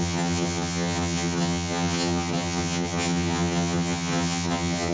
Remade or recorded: remade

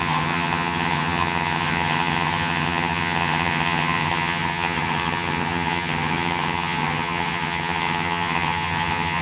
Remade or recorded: remade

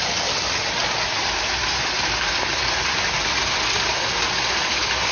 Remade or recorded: recorded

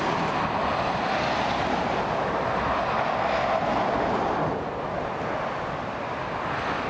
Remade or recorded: recorded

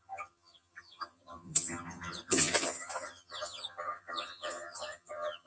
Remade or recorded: remade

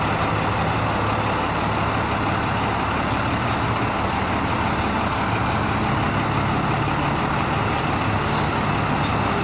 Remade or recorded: recorded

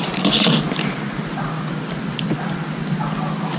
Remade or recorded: recorded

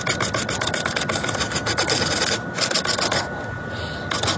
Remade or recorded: recorded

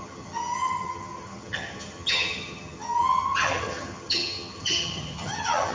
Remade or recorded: remade